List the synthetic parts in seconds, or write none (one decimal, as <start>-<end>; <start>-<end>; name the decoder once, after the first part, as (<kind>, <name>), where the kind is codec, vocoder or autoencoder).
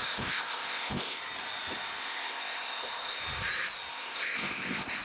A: 0.0-1.2 (codec, ZipCodec); 2.0-3.2; 3.9-5.0